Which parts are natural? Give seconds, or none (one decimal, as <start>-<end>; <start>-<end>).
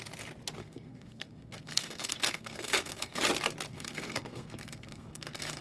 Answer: 0.0-0.6; 3.2-3.7